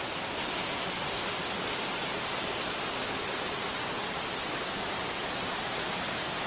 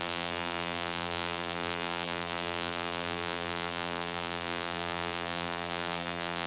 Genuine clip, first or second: first